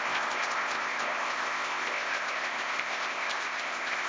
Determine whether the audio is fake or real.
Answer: fake